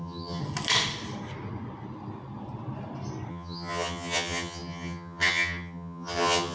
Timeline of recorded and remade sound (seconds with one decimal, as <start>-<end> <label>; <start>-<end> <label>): 0.0-0.4 remade; 0.4-3.3 recorded; 3.3-6.5 remade